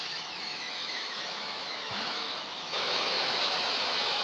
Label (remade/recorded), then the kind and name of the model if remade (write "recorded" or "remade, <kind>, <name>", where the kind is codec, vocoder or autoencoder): remade, autoencoder, DAC-VAE